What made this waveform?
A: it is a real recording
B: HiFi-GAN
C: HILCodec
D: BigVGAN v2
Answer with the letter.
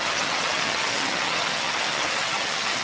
B